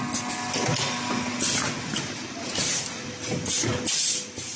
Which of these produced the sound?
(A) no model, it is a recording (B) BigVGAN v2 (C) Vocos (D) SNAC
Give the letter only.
A